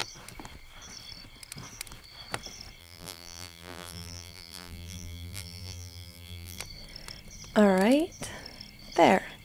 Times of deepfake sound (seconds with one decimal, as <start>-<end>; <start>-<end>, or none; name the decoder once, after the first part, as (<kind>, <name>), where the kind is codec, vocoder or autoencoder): 2.8-6.6 (vocoder, BigVGAN v2)

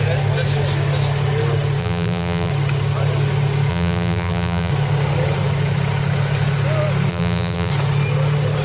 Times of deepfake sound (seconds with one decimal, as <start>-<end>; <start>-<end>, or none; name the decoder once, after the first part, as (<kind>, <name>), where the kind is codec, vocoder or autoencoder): 1.8-2.5 (vocoder, BigVGAN v2); 3.7-4.7; 7.1-7.7